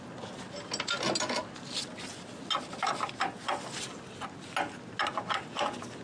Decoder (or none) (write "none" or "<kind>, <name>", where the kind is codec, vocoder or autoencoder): none